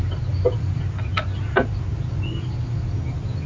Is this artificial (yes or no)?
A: no